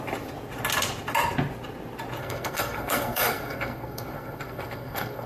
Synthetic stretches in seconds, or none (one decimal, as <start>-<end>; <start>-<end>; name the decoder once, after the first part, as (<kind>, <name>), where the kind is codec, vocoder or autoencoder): 2.2-5.3 (codec, SNAC)